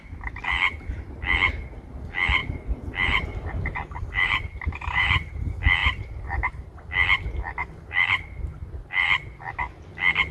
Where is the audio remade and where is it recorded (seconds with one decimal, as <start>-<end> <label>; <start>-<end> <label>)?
0.0-2.4 recorded; 2.4-5.3 remade; 5.3-5.8 recorded; 5.8-6.9 remade; 6.9-7.6 recorded; 7.6-9.4 remade; 9.4-10.3 recorded